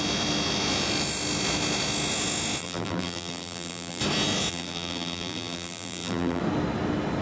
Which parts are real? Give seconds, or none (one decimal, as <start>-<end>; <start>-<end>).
0.0-2.6; 4.0-4.5; 6.4-7.2